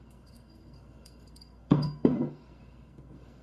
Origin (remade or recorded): remade